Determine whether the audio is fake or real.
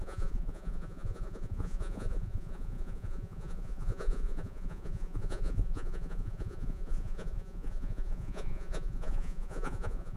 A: fake